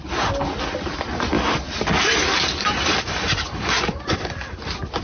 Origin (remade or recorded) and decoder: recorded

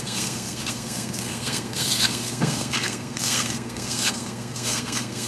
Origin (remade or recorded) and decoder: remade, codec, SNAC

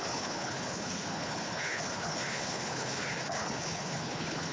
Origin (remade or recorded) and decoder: remade, codec, HILCodec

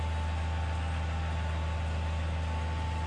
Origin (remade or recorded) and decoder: recorded